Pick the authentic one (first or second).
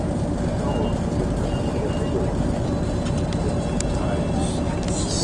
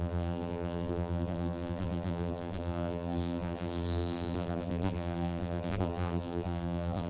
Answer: first